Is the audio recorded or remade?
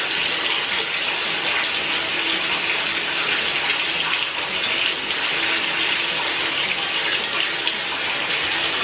recorded